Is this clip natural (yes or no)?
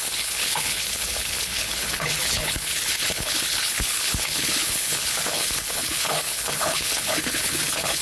no